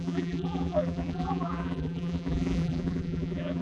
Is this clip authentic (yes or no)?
no